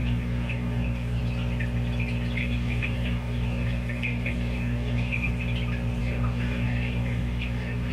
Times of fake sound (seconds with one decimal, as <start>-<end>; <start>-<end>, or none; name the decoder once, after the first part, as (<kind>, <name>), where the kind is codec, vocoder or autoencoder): 0.0-1.2 (codec, DAC); 2.4-5.3; 6.0-7.9